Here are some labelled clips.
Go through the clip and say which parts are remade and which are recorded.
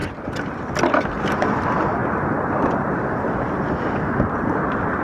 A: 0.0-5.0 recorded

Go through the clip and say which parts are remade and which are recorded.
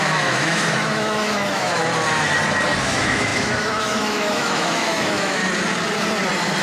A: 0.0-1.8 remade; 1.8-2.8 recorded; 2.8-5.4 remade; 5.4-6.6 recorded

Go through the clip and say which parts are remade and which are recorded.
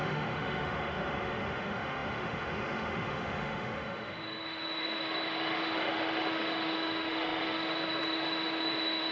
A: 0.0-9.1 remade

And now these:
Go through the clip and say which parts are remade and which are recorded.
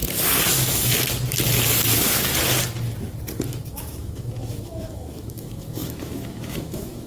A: 0.0-3.5 recorded; 3.5-7.1 remade